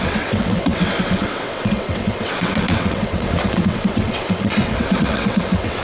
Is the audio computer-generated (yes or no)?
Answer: yes